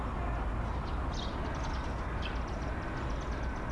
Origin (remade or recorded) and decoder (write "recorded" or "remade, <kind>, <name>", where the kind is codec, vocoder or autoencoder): recorded